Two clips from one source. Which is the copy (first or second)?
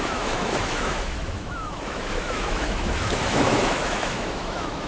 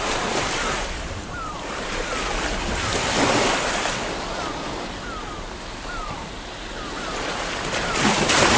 first